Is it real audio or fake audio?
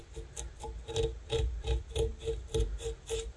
real